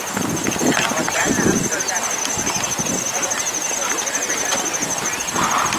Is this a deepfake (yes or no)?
no